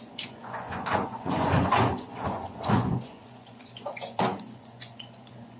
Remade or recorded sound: remade